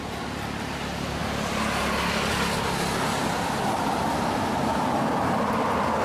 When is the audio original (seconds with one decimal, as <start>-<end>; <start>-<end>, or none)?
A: 0.0-6.0